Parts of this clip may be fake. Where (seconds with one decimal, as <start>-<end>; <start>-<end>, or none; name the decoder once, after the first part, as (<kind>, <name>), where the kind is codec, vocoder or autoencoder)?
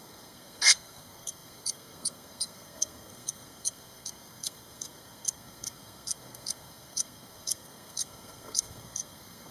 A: 0.0-9.5 (codec, SNAC)